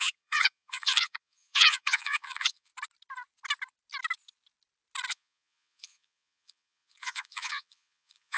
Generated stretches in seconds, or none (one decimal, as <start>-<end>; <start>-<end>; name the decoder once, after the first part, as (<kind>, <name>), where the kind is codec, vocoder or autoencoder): 0.0-2.7 (vocoder, Vocos); 5.1-8.4